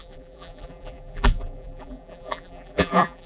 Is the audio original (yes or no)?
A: no